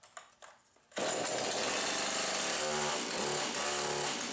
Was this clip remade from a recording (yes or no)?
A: no